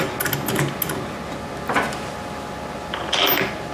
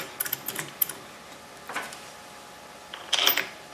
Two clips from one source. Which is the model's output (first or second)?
second